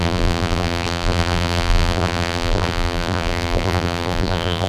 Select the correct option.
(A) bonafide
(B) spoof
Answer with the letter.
B